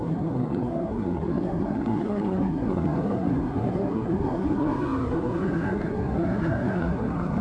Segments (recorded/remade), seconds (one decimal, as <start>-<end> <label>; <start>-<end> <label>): 0.0-7.4 remade